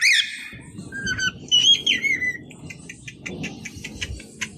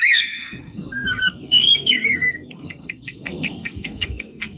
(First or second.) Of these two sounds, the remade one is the second